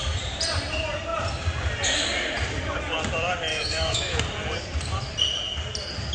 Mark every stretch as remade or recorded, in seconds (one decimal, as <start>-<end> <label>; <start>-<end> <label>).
0.0-3.5 recorded; 3.5-4.2 remade; 4.2-6.1 recorded